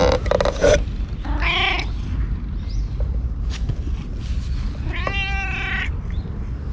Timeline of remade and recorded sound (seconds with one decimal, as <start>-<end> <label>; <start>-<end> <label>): 0.0-6.7 recorded